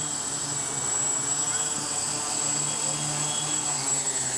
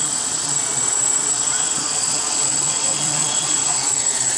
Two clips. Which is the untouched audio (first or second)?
first